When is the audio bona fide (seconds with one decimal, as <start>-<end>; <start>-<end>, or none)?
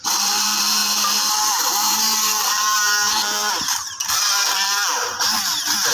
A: none